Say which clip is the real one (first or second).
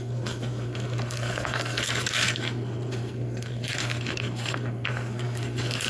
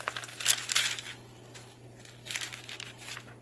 second